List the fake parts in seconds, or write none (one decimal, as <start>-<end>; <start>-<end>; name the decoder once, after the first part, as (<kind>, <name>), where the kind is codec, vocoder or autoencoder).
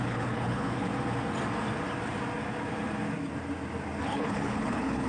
0.0-0.9 (codec, HILCodec); 4.0-5.1